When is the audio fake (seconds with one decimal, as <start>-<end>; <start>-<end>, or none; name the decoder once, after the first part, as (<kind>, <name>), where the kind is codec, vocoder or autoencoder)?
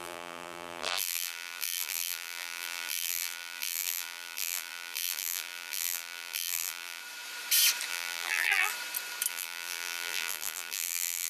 0.0-7.0 (vocoder, BigVGAN v2); 7.9-8.7; 9.3-11.3